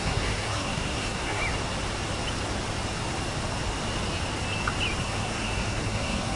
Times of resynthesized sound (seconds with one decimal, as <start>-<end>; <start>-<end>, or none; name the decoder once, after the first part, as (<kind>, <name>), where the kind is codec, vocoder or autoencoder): 0.0-1.4 (codec, SNAC); 5.0-6.4